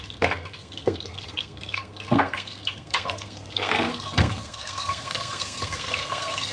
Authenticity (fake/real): fake